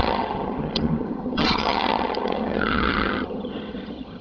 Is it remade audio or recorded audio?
remade